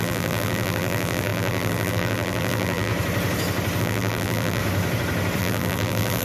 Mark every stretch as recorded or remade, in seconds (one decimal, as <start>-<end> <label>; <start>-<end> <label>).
0.0-2.9 remade; 2.9-3.8 recorded; 3.8-4.6 remade; 4.6-5.4 recorded; 5.4-6.2 remade